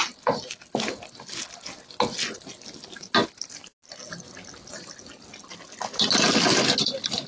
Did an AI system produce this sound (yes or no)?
no